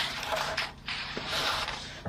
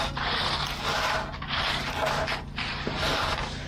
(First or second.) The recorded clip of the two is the second